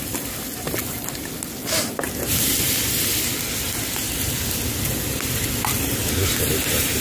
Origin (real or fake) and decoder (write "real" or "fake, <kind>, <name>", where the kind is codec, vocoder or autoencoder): real